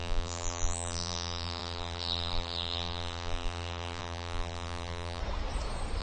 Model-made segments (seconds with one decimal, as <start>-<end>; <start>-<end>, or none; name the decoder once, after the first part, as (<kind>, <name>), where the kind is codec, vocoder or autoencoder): 0.0-5.2 (vocoder, BigVGAN v2)